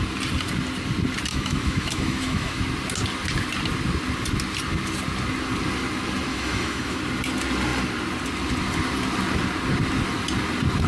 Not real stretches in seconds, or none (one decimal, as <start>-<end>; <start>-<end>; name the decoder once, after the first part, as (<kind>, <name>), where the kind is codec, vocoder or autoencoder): 1.3-2.6 (autoencoder, DAC-VAE); 6.3-7.0